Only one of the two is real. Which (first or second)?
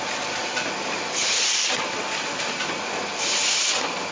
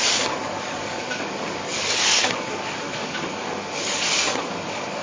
first